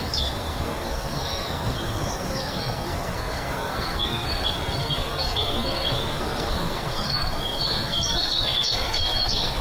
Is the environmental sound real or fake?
fake